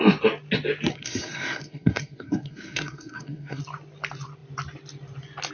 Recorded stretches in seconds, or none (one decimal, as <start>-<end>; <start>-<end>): 0.0-0.9; 3.6-5.5